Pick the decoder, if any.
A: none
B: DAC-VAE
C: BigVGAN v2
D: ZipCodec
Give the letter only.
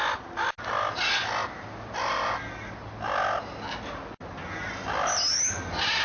A